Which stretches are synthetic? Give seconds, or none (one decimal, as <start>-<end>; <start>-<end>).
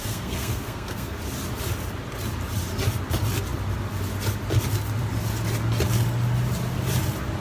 0.0-1.2